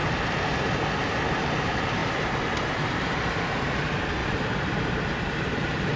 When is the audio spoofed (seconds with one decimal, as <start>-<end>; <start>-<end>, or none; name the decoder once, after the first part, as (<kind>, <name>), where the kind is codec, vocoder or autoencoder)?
0.0-0.7 (vocoder, BigVGAN v2); 2.0-3.0; 4.2-5.0